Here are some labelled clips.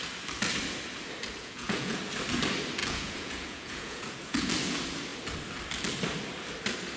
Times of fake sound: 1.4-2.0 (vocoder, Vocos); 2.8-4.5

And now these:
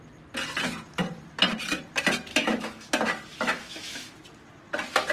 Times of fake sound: 2.3-2.9 (autoencoder, DAC-VAE); 3.3-4.1

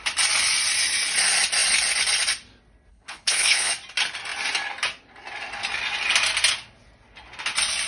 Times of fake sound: 2.9-3.7 (codec, HILCodec)

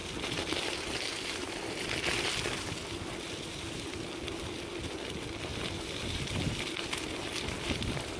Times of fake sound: none

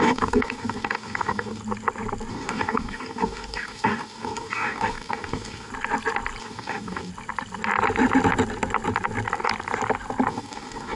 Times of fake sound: 0.0-1.6 (codec, DAC); 2.3-5.7; 6.4-7.1; 10.3-11.0

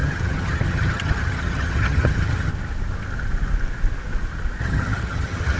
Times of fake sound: 0.0-2.5 (vocoder, HiFi-GAN); 4.6-5.6

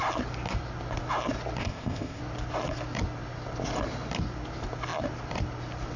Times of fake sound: 1.6-2.2 (codec, ZipCodec)